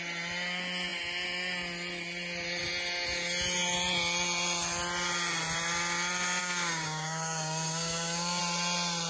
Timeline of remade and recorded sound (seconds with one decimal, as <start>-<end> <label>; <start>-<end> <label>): 0.0-6.4 recorded; 6.4-8.4 remade; 8.4-9.1 recorded